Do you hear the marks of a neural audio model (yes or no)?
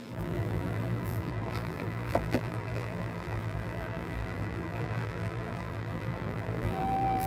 yes